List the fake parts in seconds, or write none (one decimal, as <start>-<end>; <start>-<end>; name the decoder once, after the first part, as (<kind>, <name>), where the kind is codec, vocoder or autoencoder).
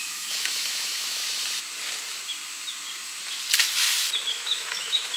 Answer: 0.0-1.2 (autoencoder, DAC-VAE); 4.3-5.2